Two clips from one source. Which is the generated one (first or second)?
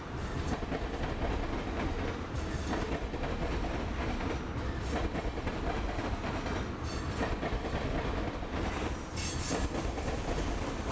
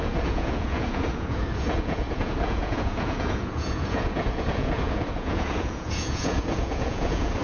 second